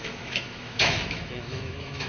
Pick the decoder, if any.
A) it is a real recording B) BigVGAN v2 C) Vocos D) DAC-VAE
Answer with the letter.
D